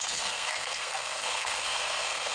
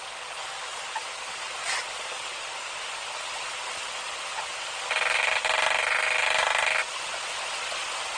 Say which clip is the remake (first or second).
first